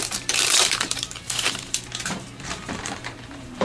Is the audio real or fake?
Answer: fake